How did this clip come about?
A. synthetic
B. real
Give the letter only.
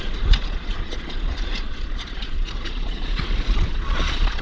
A